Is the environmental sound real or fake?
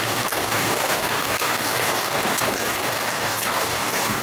fake